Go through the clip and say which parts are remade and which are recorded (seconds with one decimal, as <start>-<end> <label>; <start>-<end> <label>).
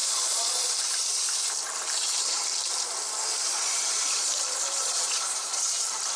0.0-0.7 remade; 0.7-3.5 recorded; 3.5-4.3 remade; 4.3-4.8 recorded; 4.8-5.6 remade; 5.6-6.2 recorded